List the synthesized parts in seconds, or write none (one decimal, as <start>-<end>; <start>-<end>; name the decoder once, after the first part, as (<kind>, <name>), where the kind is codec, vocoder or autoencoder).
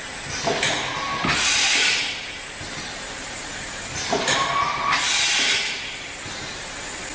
none